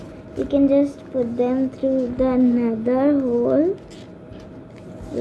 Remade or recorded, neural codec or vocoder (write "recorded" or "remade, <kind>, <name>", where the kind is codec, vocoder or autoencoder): recorded